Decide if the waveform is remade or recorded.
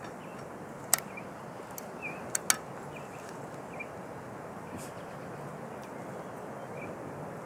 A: recorded